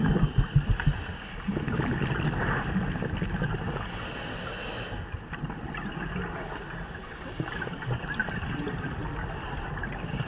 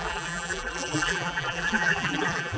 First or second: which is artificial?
second